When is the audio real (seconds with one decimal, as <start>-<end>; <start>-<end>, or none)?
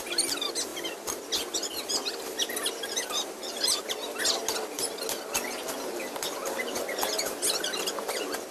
0.0-8.5